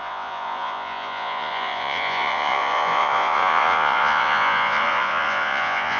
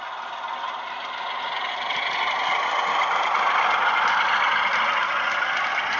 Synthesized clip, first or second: first